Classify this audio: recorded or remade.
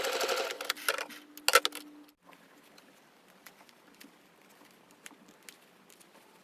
recorded